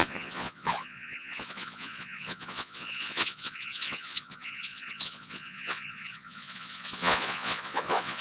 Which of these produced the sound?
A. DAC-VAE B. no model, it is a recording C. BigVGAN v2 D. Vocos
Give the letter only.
D